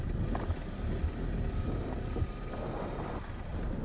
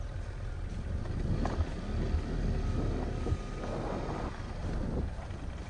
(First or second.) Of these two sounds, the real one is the second